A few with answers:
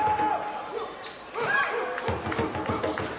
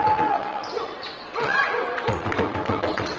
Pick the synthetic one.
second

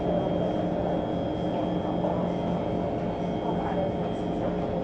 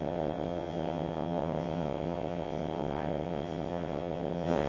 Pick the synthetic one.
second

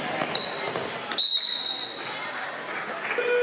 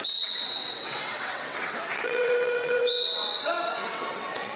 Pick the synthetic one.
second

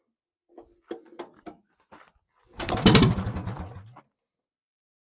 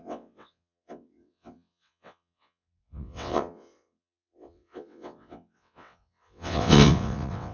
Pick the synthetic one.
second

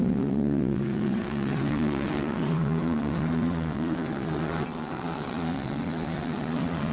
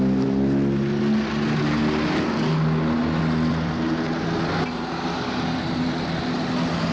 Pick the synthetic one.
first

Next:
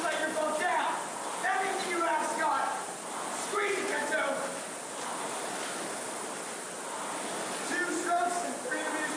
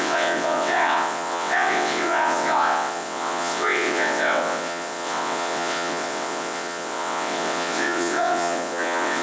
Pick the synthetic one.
second